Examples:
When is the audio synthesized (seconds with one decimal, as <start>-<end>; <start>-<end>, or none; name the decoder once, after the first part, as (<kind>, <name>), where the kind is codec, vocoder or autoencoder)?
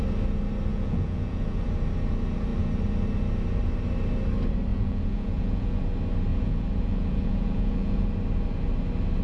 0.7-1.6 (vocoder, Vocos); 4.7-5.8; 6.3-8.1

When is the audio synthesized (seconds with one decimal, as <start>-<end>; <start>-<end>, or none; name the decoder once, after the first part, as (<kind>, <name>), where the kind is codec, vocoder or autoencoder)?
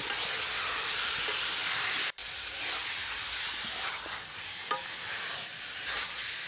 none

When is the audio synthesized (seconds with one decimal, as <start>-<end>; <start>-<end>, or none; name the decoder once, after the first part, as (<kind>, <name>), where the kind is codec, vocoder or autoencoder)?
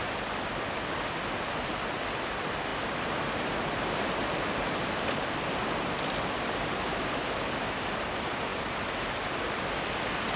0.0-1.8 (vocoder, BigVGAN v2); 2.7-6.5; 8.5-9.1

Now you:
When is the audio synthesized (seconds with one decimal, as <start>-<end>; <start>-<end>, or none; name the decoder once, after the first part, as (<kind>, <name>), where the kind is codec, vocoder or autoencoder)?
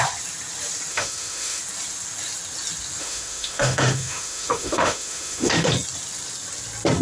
0.9-1.6 (autoencoder, DAC-VAE); 3.0-5.7